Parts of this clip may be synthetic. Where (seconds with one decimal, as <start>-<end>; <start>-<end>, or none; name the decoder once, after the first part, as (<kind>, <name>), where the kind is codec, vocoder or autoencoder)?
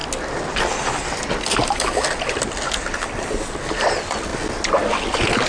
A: none